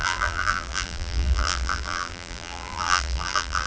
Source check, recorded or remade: remade